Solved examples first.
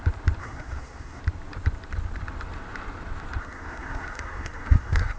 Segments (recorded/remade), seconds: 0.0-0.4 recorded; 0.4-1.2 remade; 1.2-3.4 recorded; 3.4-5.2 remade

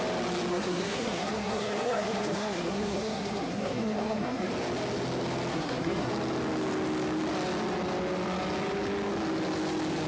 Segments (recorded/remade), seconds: 0.0-0.5 recorded; 0.5-4.5 remade; 4.5-5.5 recorded; 5.5-6.1 remade; 6.1-10.1 recorded